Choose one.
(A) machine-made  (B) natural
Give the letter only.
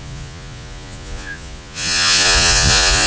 A